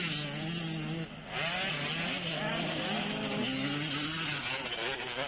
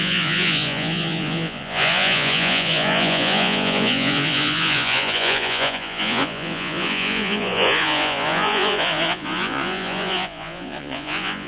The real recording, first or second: first